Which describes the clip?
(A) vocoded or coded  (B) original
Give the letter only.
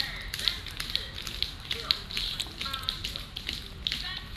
B